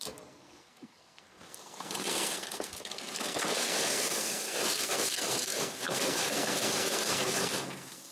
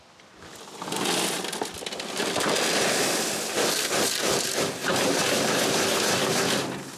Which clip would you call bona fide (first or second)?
second